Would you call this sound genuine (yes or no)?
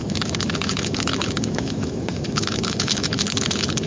no